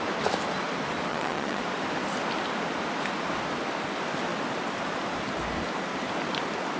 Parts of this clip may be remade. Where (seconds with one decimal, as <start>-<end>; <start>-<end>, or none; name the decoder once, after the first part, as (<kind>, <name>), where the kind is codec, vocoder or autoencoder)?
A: 1.1-1.6 (vocoder, HiFi-GAN)